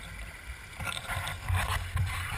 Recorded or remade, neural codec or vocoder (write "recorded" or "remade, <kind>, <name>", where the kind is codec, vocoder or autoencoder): remade, vocoder, BigVGAN v2